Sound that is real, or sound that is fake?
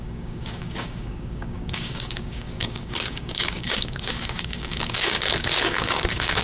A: fake